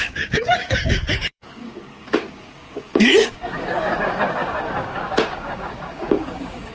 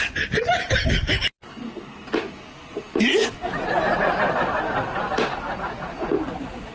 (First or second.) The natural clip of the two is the second